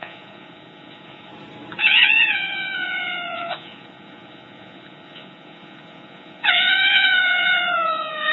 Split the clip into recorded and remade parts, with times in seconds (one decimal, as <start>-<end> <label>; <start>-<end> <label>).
0.0-1.3 remade; 1.3-1.8 recorded; 1.8-8.3 remade